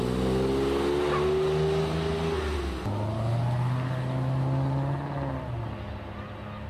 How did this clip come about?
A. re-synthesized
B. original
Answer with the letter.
B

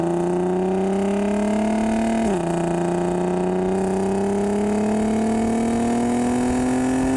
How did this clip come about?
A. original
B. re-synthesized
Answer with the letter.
A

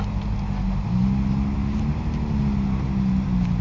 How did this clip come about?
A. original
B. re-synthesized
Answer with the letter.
A